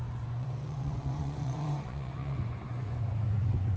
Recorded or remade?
remade